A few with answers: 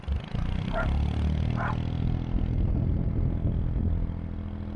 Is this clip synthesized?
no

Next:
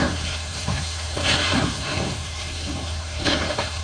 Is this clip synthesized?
yes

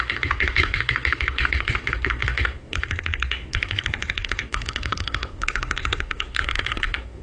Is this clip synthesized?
yes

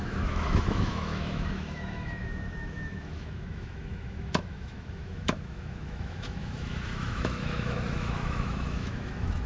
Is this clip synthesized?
yes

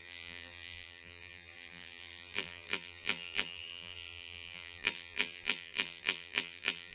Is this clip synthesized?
yes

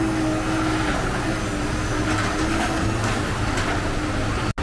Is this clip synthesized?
no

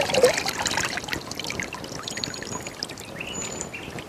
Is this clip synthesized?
yes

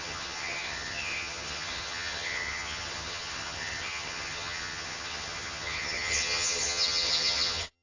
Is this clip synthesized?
yes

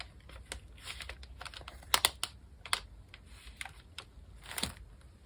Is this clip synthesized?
no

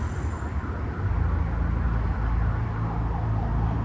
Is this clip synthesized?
no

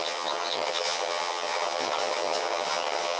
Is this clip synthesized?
yes